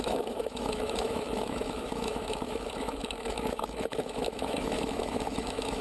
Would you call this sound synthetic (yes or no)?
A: yes